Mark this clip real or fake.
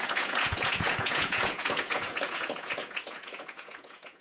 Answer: fake